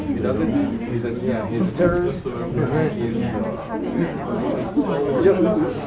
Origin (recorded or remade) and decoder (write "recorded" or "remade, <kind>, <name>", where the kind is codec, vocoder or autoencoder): recorded